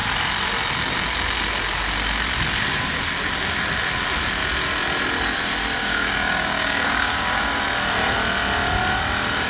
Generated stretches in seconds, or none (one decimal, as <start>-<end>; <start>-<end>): 5.8-7.6